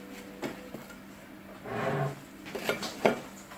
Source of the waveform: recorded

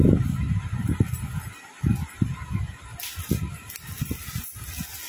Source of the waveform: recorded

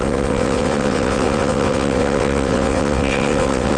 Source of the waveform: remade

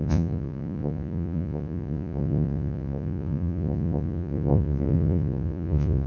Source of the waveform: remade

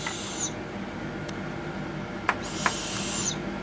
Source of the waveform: recorded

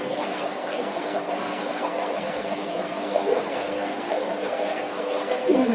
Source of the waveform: remade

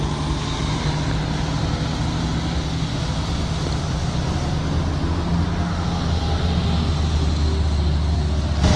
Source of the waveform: recorded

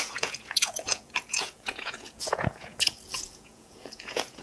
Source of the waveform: remade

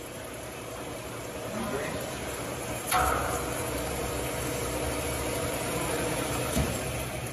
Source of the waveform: remade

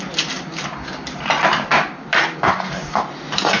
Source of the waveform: remade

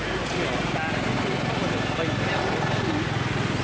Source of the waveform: recorded